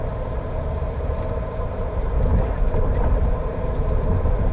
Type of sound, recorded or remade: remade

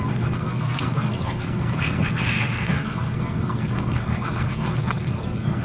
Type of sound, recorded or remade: remade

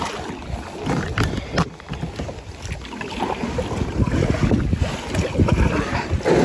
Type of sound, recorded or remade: recorded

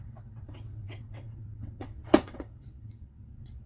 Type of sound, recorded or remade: remade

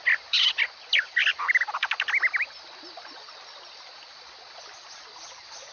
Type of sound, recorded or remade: recorded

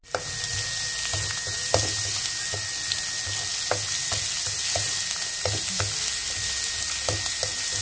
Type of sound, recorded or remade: recorded